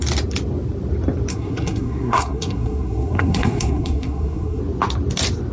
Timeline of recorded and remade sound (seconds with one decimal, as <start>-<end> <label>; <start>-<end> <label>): 0.0-1.3 recorded; 1.3-4.6 remade; 4.6-5.5 recorded